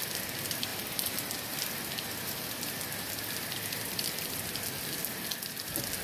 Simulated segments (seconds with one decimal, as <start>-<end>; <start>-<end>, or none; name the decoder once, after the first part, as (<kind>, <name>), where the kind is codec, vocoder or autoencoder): 0.7-4.3 (vocoder, BigVGAN v2)